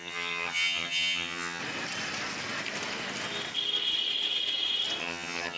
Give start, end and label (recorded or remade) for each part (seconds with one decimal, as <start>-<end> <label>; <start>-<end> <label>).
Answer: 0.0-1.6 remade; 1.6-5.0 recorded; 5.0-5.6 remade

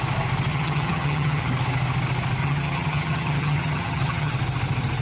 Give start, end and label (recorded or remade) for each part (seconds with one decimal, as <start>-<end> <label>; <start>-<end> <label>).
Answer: 0.0-0.5 recorded; 0.5-1.5 remade; 1.5-2.4 recorded; 2.4-4.3 remade; 4.3-5.0 recorded

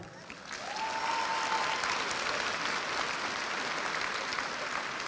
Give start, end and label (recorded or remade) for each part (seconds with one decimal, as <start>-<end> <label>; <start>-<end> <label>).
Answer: 0.0-5.1 recorded

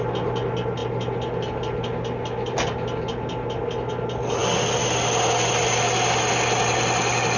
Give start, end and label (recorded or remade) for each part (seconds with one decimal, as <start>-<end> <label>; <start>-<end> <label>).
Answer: 0.0-7.4 recorded

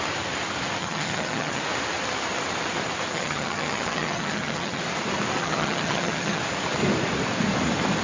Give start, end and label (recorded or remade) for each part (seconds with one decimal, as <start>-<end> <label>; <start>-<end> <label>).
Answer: 0.0-0.8 recorded; 0.8-1.6 remade; 1.6-3.1 recorded; 3.1-4.8 remade; 4.8-5.4 recorded; 5.4-6.4 remade; 6.4-8.0 recorded